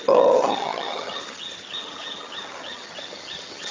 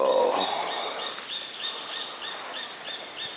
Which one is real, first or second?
second